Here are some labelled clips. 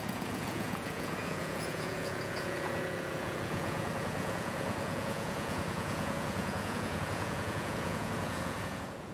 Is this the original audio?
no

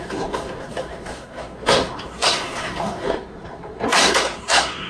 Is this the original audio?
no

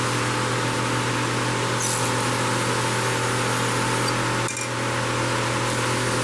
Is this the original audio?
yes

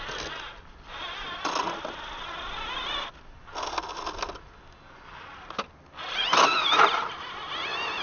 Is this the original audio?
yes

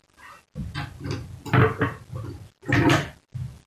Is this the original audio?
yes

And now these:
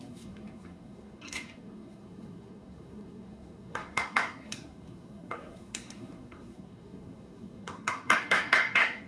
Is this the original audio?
no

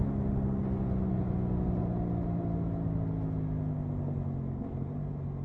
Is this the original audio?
yes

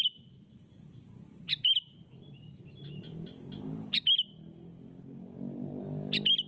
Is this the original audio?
yes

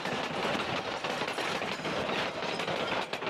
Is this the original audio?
yes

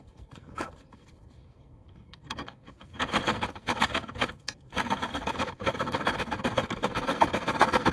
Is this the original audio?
no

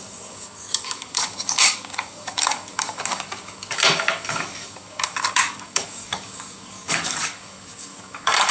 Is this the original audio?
no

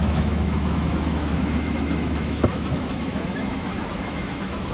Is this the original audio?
no